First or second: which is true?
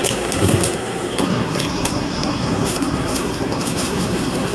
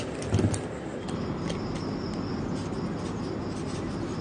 second